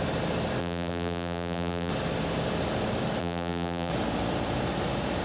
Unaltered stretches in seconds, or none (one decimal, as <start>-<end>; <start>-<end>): 0.0-0.6; 1.9-3.2; 3.9-5.2